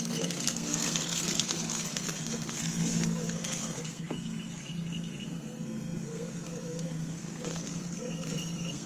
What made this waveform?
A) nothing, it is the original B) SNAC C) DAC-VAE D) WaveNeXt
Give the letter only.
B